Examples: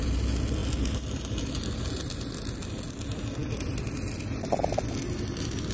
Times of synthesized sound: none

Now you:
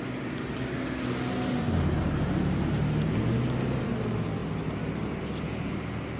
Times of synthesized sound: none